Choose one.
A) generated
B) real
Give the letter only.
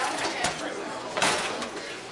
A